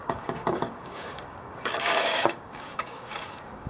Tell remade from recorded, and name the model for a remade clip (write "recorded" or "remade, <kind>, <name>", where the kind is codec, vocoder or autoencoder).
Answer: remade, codec, DAC